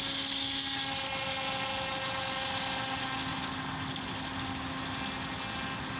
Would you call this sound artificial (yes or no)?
no